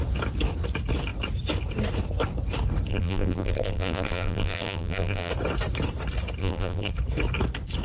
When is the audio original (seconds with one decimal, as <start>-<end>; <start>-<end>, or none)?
0.0-2.9; 5.3-6.4; 6.9-7.8

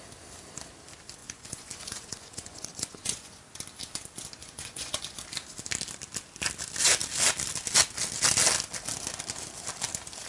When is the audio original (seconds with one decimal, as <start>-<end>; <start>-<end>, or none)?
0.0-1.2; 3.4-4.4; 5.2-10.3

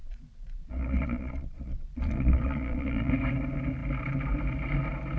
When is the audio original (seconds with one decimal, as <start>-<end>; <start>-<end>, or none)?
3.1-5.2

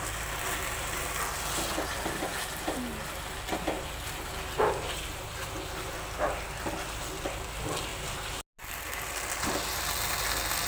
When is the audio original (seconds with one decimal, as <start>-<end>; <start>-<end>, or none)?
0.0-10.7

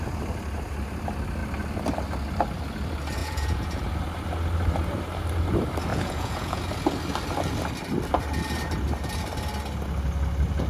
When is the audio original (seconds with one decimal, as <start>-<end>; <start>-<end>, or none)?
0.0-3.2; 3.8-5.9; 6.6-10.7

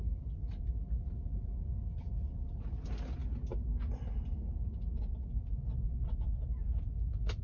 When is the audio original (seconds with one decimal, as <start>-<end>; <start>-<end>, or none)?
0.0-7.4